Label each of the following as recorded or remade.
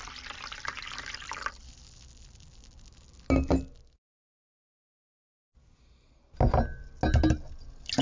recorded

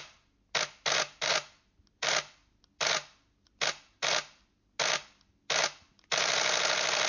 recorded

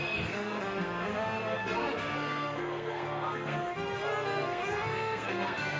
remade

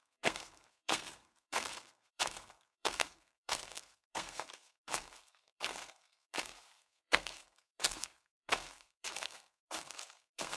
remade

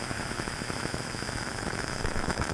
remade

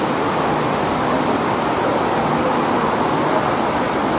recorded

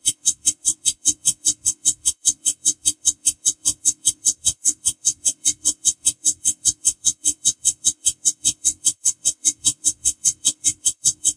remade